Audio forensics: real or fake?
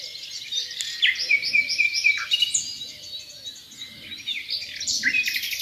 real